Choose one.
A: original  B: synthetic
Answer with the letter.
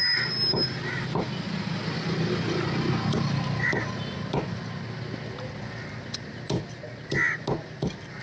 A